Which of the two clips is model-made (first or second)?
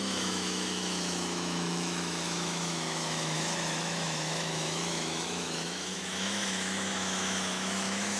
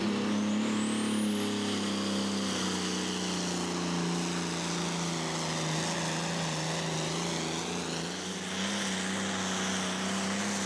first